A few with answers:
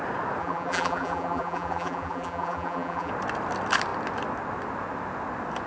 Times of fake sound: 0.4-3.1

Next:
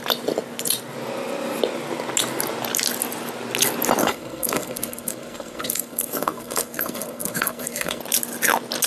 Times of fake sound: 4.0-8.0

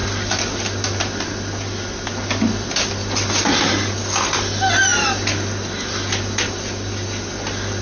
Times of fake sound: none

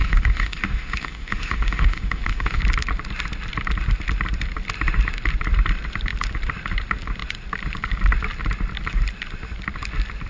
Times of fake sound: 0.0-2.6

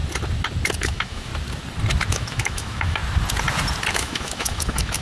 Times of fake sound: 0.8-1.3; 2.1-3.0; 3.9-5.0

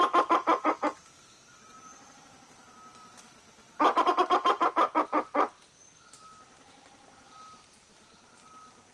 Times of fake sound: none